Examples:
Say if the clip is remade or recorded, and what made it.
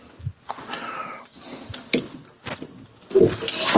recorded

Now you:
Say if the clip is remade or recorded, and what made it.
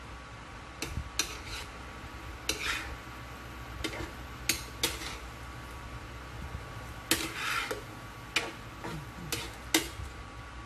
recorded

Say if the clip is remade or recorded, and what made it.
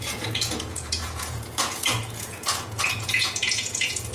remade, vocoder, Vocos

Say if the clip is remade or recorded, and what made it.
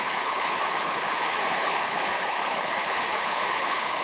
remade, codec, HILCodec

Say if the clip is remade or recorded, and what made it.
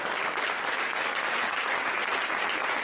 recorded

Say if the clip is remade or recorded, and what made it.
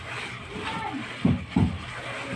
recorded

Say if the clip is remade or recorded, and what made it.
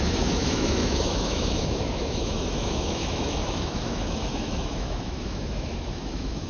remade, autoencoder, DAC-VAE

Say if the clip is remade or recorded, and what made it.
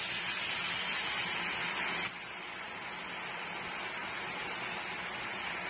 recorded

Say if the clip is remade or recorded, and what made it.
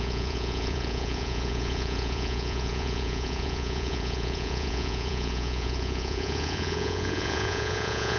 remade, vocoder, Vocos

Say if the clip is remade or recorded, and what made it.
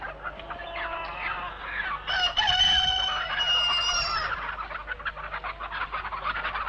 recorded